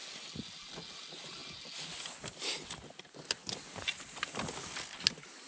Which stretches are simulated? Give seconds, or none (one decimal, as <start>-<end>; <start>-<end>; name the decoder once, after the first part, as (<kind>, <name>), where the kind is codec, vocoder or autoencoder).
none